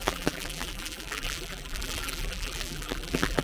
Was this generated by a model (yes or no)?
yes